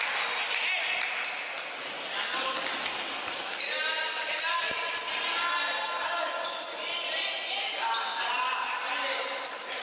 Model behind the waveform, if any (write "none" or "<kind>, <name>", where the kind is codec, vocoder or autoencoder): none